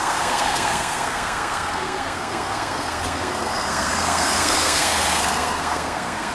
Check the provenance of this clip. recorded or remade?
remade